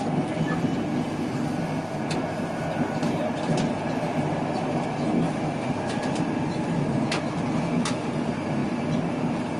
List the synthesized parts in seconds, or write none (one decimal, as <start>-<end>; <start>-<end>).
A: none